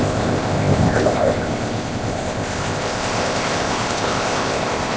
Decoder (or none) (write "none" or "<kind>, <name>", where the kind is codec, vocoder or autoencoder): codec, ZipCodec